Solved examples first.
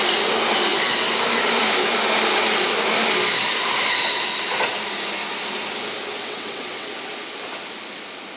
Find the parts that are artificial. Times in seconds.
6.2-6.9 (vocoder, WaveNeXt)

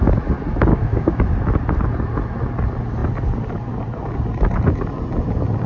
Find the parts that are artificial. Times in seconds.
0.7-1.2 (codec, DAC)

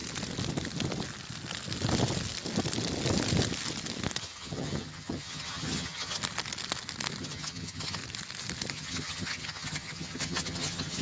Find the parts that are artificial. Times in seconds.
4.2-6.2 (vocoder, HiFi-GAN); 7.2-8.0; 8.7-11.0

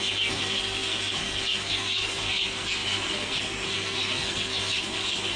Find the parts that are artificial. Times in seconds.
0.0-5.4 (codec, SNAC)

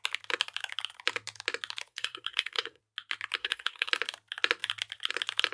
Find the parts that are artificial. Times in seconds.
1.9-2.8 (codec, SNAC); 3.4-3.9

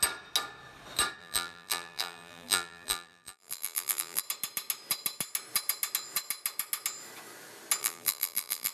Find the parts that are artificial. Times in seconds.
1.2-4.2 (vocoder, BigVGAN v2); 7.8-8.7

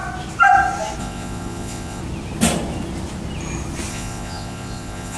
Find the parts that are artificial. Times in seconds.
1.0-2.0 (vocoder, Vocos); 3.9-5.2

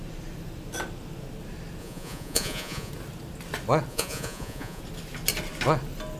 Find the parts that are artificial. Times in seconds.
1.8-2.9 (vocoder, Vocos); 3.9-4.8